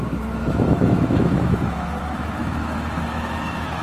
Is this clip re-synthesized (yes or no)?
yes